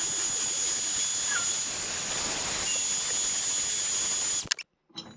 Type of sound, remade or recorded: recorded